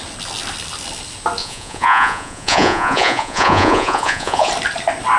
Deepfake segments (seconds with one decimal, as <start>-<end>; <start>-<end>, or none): 1.4-4.5